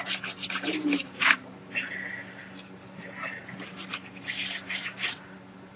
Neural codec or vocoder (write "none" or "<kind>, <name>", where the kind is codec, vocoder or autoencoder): none